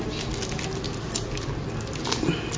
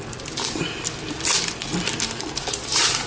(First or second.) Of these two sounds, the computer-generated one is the second